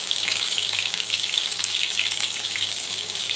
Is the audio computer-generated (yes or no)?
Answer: yes